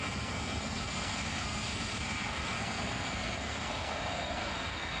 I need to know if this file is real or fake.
fake